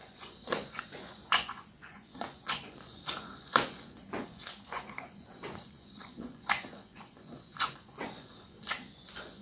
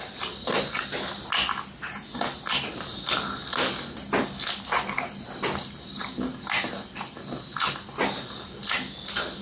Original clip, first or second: second